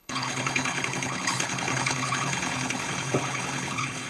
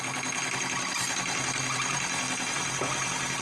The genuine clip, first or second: second